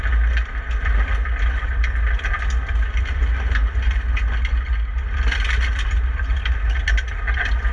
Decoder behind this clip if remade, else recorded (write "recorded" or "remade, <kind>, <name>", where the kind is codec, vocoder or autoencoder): recorded